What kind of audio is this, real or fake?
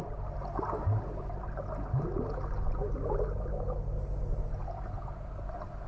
real